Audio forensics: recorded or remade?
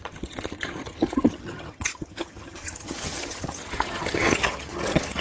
remade